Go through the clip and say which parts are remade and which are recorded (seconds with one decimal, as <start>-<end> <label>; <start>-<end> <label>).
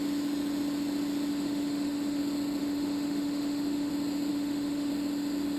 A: 0.0-1.3 recorded; 1.3-2.2 remade; 2.2-2.6 recorded; 2.6-3.9 remade; 3.9-4.3 recorded; 4.3-4.9 remade; 4.9-5.6 recorded